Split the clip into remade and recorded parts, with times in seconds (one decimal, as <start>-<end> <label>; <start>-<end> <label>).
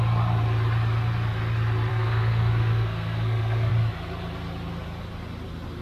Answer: 0.0-1.9 recorded; 1.9-3.7 remade; 3.7-5.8 recorded